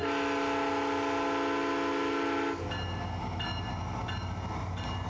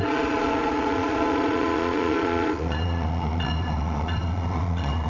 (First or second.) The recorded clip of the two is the first